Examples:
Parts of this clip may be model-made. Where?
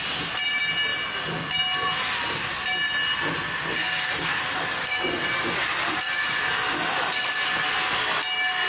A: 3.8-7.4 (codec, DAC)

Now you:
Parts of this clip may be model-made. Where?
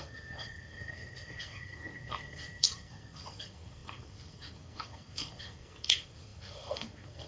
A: 0.0-7.3 (codec, SNAC)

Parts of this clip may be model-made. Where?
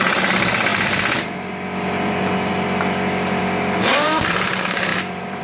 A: 0.7-1.5 (vocoder, BigVGAN v2); 3.9-4.4; 4.9-5.4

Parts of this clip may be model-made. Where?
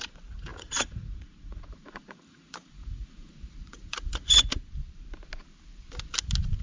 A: 0.5-4.5 (vocoder, Vocos)